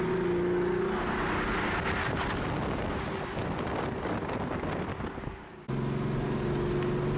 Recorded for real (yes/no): yes